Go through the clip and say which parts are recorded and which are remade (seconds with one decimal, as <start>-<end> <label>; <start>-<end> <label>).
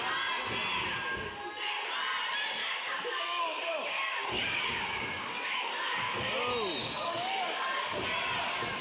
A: 0.0-2.6 recorded; 2.6-6.3 remade; 6.3-6.8 recorded; 6.8-7.6 remade; 7.6-8.8 recorded